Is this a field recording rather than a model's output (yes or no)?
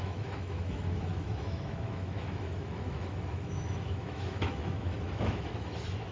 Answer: no